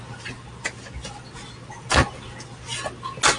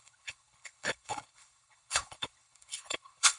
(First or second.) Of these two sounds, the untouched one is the first